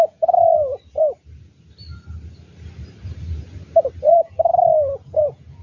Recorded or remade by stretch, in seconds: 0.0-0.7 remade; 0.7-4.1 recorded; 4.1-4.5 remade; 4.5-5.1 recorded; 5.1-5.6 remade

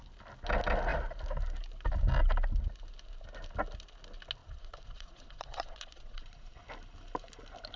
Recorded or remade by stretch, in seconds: 0.0-4.4 recorded; 4.4-6.6 remade; 6.6-7.8 recorded

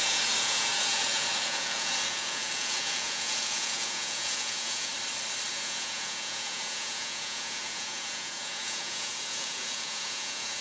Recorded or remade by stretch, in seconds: 0.0-4.9 remade; 4.9-5.5 recorded; 5.5-10.6 remade

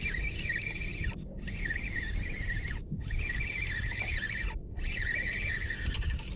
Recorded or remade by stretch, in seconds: 0.0-6.4 recorded

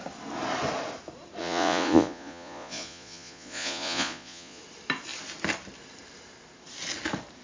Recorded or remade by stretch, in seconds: 0.0-1.4 recorded; 1.4-4.6 remade; 4.6-7.4 recorded

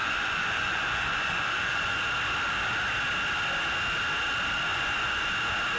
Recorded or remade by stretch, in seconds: 0.0-2.0 remade; 2.0-4.7 recorded; 4.7-5.3 remade; 5.3-5.8 recorded

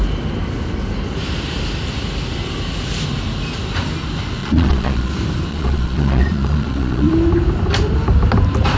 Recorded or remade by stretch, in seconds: 0.0-4.4 recorded; 4.4-5.1 remade; 5.1-5.5 recorded; 5.5-7.1 remade; 7.1-8.8 recorded

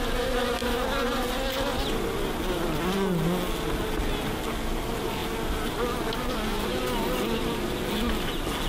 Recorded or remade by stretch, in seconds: 0.0-8.7 recorded